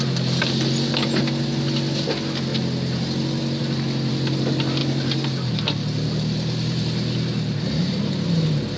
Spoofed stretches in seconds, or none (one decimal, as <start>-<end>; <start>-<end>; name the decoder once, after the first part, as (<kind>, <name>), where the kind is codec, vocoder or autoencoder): 2.5-3.0 (vocoder, BigVGAN v2); 4.8-8.1